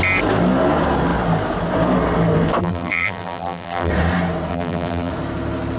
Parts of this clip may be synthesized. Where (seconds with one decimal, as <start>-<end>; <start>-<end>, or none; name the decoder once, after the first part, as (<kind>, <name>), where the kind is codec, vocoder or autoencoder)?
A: 2.6-3.9 (vocoder, BigVGAN v2); 4.5-5.1